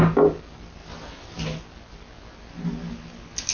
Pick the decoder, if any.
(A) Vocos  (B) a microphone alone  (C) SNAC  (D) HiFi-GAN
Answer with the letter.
B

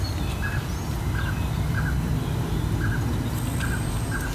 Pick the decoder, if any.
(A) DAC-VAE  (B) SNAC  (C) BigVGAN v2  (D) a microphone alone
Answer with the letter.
D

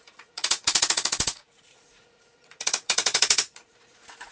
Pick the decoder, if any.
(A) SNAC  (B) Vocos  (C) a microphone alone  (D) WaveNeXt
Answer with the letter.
B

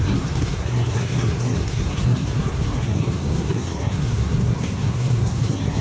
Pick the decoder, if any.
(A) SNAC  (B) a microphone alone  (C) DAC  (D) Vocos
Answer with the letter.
A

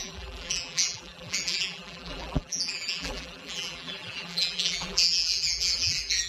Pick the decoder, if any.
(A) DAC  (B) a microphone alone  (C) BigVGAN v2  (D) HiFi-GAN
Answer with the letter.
C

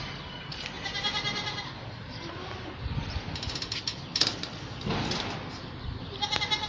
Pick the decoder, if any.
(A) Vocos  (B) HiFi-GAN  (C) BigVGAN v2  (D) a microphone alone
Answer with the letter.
D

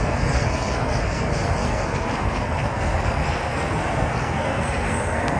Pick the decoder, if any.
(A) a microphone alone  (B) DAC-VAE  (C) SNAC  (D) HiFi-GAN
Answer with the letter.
C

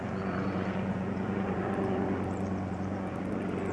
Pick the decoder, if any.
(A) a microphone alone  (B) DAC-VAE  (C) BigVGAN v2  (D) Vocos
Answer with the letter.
D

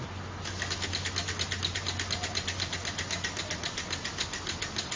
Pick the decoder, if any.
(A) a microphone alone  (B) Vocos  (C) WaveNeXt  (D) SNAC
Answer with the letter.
A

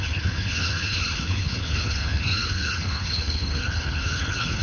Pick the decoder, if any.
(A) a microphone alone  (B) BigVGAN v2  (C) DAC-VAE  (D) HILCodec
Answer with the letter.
D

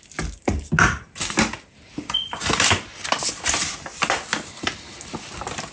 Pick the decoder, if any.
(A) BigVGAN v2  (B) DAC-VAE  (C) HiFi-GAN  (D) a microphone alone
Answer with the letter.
D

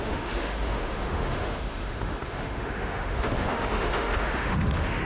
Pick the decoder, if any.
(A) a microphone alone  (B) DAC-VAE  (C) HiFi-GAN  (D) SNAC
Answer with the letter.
B